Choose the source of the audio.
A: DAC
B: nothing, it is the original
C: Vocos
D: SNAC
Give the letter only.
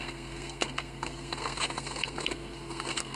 D